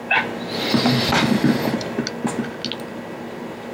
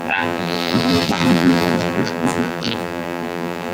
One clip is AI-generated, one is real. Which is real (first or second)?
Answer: first